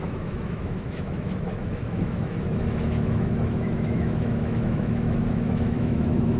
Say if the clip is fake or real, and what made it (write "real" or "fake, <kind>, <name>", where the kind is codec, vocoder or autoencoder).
fake, autoencoder, DAC-VAE